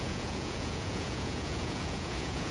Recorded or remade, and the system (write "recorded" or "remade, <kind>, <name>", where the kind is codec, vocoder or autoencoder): remade, vocoder, Vocos